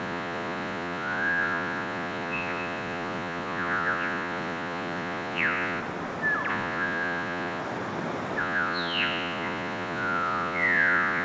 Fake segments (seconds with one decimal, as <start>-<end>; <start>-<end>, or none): 0.0-5.8; 6.5-7.6; 8.4-11.2

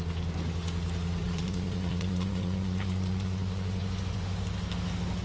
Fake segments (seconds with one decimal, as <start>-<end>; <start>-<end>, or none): 1.2-4.3

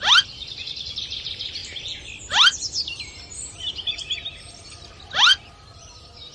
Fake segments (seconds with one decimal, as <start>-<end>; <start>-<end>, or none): none

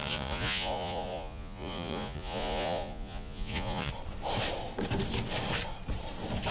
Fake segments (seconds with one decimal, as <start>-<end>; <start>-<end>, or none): 0.0-3.9

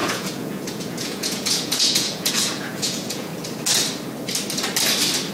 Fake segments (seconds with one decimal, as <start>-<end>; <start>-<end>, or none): 0.0-3.3

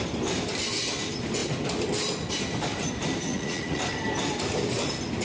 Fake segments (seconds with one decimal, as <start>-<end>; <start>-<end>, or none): 3.3-3.8

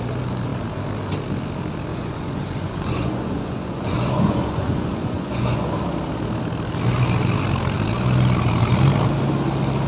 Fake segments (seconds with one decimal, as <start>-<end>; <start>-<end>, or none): 1.9-5.7

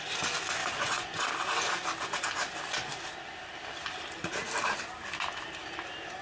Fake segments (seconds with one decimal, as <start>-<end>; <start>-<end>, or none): 0.6-1.2